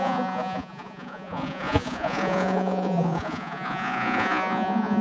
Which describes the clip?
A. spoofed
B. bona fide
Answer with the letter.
A